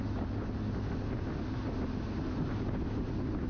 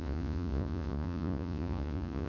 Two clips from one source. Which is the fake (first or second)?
second